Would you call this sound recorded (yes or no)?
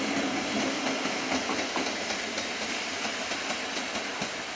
yes